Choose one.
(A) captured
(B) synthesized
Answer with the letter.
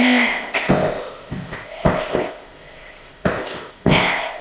B